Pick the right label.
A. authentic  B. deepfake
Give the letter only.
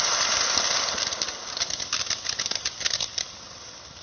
A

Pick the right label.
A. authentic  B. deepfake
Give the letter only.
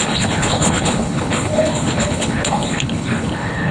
B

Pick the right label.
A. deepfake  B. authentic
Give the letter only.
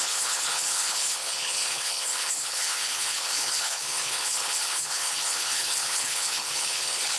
A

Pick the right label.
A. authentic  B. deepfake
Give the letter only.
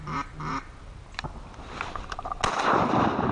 A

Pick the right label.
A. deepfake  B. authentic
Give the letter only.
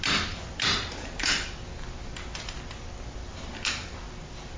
B